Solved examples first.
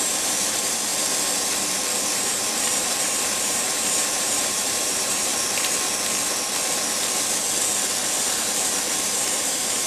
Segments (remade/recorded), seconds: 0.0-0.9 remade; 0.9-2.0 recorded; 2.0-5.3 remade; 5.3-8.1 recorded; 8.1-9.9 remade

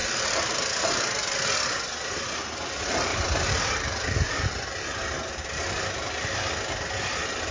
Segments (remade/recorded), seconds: 0.0-0.5 remade; 0.5-3.1 recorded; 3.1-4.7 remade; 4.7-7.5 recorded

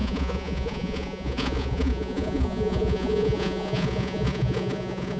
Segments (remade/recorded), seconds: 0.0-5.2 remade

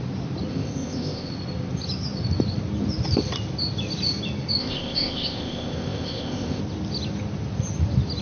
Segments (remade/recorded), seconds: 0.0-0.5 recorded; 0.5-1.3 remade; 1.3-4.6 recorded; 4.6-6.6 remade; 6.6-8.2 recorded

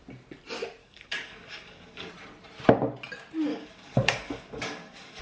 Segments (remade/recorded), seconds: 0.0-0.8 recorded; 0.8-2.1 remade; 2.1-3.5 recorded; 3.5-5.2 remade